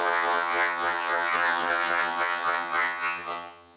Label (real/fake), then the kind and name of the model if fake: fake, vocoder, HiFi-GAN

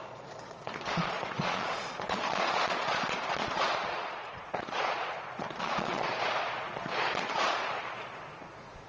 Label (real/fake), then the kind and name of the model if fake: fake, vocoder, Vocos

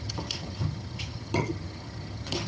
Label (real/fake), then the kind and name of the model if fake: fake, vocoder, HiFi-GAN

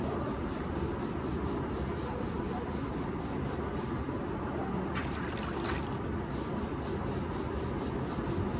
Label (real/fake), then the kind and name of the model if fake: real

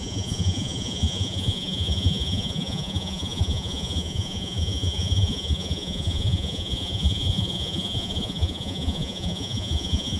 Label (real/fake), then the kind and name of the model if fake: fake, vocoder, Vocos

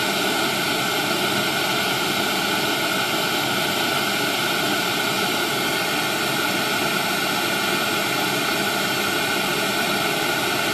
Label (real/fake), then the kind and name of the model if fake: real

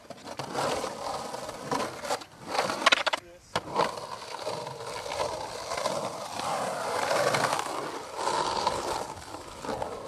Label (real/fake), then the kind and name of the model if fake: real